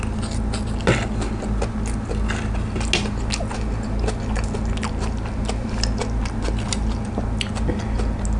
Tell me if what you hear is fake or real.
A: real